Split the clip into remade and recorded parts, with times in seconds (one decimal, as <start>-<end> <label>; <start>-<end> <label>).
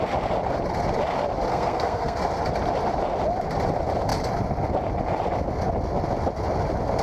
0.0-1.5 recorded; 1.5-2.2 remade; 2.2-7.0 recorded